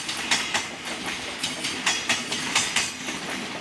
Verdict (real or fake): real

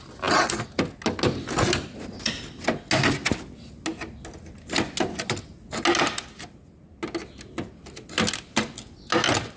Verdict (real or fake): real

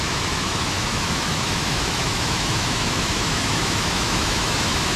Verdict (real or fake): fake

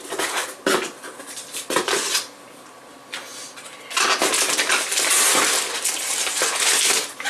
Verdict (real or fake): real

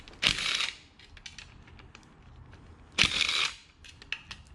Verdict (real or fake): real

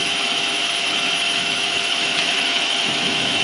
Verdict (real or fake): fake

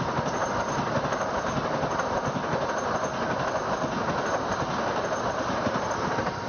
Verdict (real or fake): real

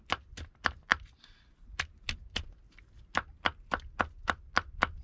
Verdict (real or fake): real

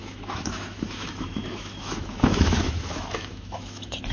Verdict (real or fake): fake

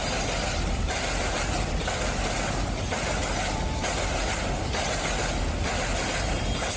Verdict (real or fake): real